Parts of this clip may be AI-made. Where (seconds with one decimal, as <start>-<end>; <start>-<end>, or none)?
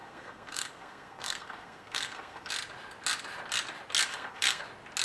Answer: 0.0-2.5; 4.1-4.6